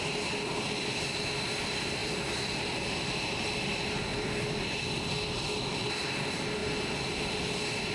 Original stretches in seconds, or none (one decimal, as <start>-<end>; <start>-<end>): 0.0-7.9